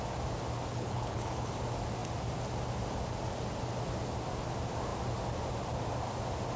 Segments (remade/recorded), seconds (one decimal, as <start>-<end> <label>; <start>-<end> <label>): 0.0-0.7 recorded; 0.7-1.5 remade; 1.5-6.6 recorded